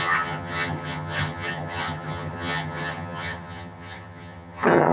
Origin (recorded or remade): remade